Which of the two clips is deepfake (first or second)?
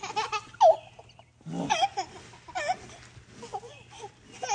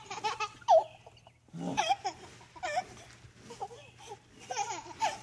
second